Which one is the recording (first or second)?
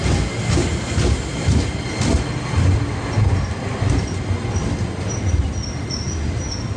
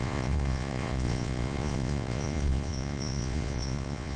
first